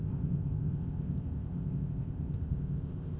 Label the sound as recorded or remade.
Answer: remade